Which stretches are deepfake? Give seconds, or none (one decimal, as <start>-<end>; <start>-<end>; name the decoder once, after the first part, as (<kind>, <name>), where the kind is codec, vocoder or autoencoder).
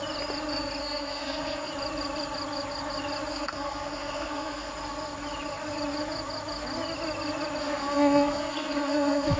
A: 0.8-1.7 (codec, SNAC); 3.3-4.7; 7.6-9.4